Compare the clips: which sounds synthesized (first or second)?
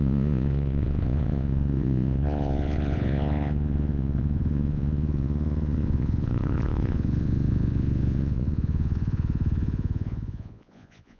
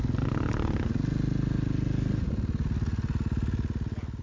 first